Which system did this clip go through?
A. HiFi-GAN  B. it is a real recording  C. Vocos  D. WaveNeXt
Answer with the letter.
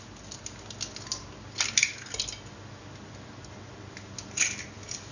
B